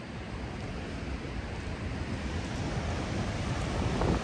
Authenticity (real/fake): real